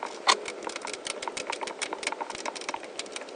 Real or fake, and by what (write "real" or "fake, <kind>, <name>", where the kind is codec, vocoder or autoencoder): real